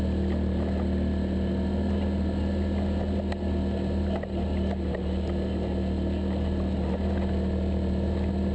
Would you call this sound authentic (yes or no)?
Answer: yes